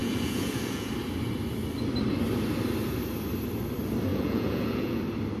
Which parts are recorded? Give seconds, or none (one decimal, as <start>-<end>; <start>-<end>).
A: 0.9-4.1; 5.0-5.4